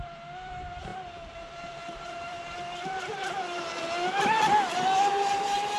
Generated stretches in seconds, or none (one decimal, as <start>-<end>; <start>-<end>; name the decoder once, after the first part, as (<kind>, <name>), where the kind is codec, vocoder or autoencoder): 0.0-3.8 (vocoder, BigVGAN v2); 5.1-5.8